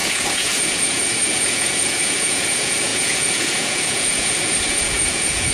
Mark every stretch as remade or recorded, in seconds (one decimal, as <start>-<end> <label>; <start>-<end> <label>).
0.0-5.5 remade